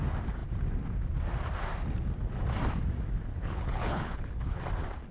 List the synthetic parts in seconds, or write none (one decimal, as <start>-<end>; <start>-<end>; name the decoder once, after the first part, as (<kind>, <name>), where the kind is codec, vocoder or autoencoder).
3.3-4.6 (codec, HILCodec)